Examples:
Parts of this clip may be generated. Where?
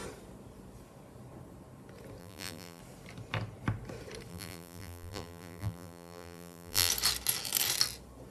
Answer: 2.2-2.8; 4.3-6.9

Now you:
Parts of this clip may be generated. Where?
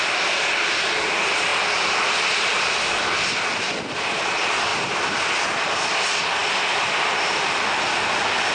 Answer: 1.5-2.5; 4.7-5.3; 6.4-7.4